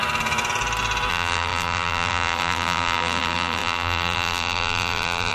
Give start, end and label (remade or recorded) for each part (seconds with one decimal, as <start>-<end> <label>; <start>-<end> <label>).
0.0-1.1 recorded; 1.1-5.3 remade